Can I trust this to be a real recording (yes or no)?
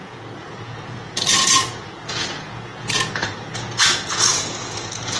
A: no